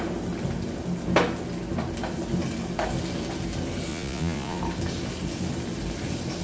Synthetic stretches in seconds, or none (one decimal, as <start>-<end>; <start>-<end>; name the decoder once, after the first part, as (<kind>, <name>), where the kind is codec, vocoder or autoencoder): 3.9-4.6 (vocoder, Vocos)